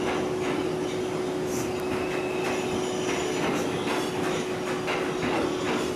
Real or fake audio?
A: real